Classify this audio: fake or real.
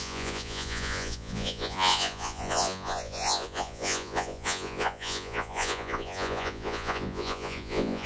fake